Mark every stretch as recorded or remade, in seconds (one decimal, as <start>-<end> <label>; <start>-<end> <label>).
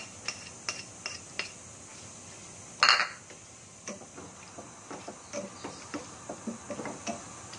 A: 0.0-7.6 recorded